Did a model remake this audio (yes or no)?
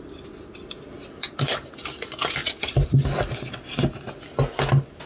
no